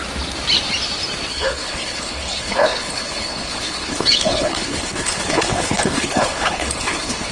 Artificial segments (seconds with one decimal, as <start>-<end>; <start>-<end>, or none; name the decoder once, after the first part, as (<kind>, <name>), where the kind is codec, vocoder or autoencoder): 1.3-7.3 (codec, HILCodec)